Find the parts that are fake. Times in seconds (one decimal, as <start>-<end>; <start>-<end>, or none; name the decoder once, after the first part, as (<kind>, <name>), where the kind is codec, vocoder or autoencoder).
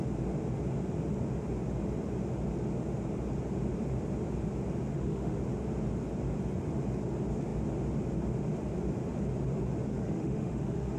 4.9-5.4 (autoencoder, DAC-VAE); 9.9-11.0